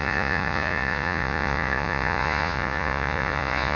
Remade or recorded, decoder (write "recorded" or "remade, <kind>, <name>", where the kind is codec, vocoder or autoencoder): remade, vocoder, Vocos